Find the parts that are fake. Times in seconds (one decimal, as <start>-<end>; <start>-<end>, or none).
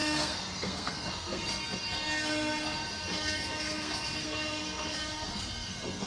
0.0-6.1